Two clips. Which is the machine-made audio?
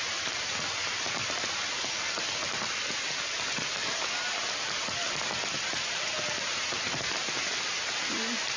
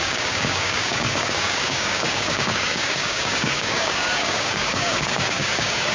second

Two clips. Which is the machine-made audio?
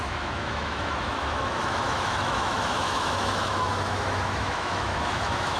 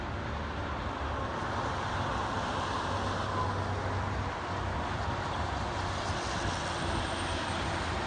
first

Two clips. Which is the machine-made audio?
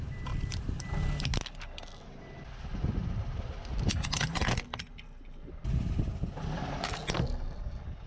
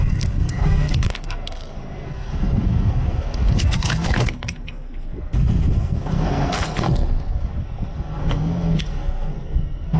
second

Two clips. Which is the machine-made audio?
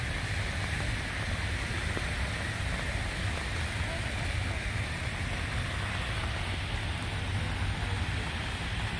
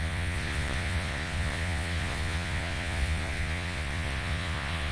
second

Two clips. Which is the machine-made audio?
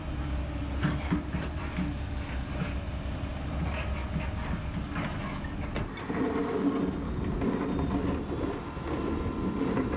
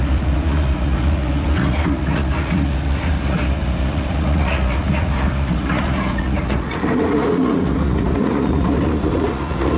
second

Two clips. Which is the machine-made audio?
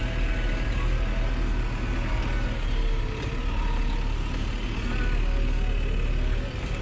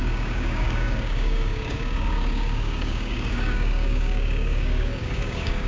second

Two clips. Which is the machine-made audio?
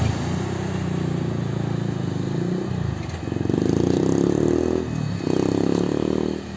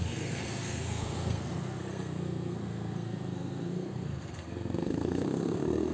second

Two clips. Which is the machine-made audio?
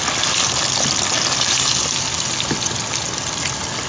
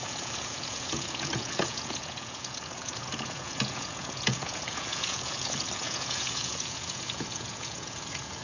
second